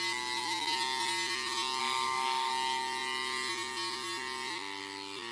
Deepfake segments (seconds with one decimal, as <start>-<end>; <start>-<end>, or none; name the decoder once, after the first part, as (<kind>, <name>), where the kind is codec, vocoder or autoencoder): 1.8-2.5 (codec, SNAC)